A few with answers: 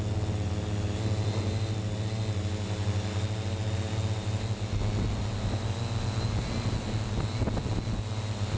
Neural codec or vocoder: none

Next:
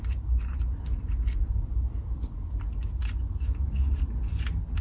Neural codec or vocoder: none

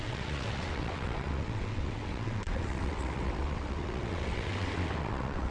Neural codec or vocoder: vocoder, WaveNeXt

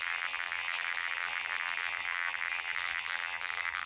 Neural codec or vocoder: vocoder, BigVGAN v2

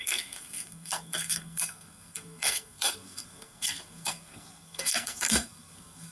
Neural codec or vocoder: codec, SNAC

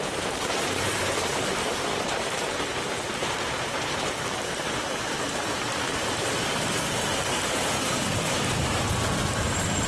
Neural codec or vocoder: vocoder, BigVGAN v2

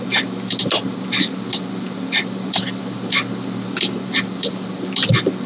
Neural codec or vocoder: none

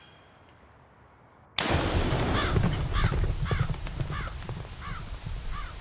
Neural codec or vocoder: none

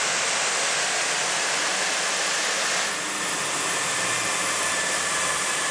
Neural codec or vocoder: none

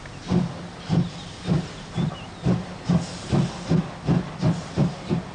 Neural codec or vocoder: none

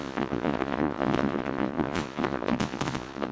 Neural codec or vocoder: vocoder, Vocos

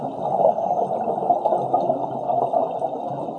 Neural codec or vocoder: none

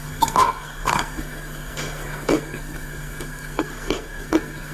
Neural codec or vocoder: codec, SNAC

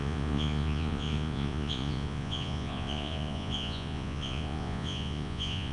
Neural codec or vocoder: vocoder, Vocos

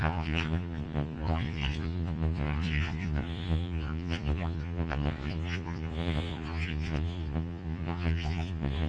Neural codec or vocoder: vocoder, Vocos